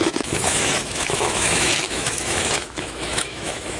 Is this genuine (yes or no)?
no